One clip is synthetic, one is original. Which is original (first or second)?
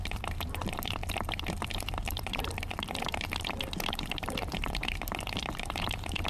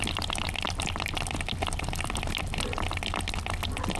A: second